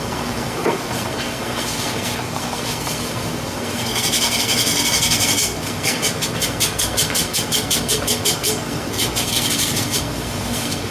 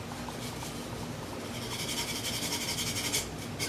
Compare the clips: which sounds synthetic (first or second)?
first